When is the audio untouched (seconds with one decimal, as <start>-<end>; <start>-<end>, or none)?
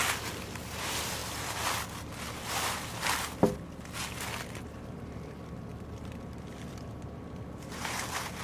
1.2-4.6